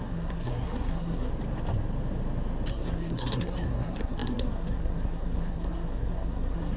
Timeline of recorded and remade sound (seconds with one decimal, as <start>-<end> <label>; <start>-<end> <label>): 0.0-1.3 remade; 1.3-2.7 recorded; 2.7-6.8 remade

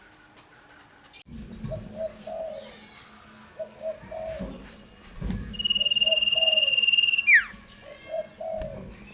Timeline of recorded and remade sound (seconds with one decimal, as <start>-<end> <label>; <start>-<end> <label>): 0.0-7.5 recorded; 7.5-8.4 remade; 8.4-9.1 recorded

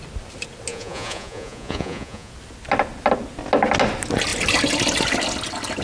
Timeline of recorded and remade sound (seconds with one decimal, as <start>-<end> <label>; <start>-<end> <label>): 0.0-0.7 recorded; 0.7-2.3 remade; 2.3-5.8 recorded

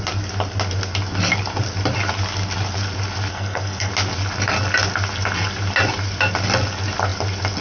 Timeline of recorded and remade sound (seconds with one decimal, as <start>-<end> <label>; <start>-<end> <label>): 0.0-3.3 recorded; 3.3-3.9 remade; 3.9-7.6 recorded

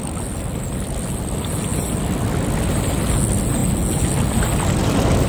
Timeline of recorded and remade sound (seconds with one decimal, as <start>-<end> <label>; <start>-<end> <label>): 0.0-5.3 recorded